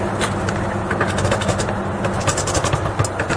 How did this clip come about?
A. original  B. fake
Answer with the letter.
A